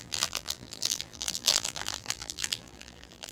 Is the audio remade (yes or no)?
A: yes